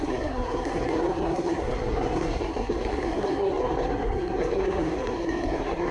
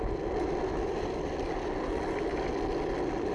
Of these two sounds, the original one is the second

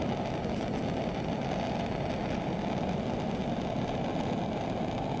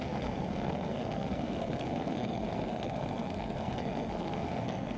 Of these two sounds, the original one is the first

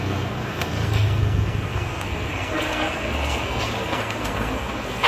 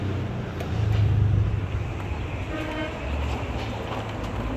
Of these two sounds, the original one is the second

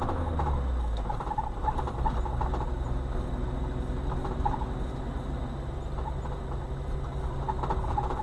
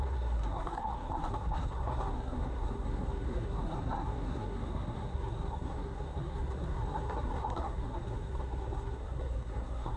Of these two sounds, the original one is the first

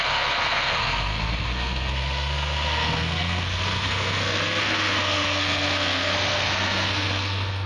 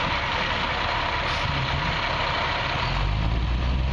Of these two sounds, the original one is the second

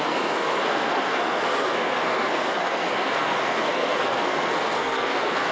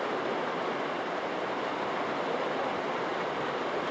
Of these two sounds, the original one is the second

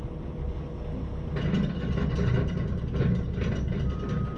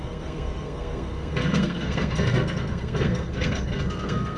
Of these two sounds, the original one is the first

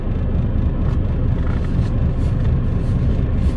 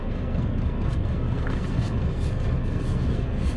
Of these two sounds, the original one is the first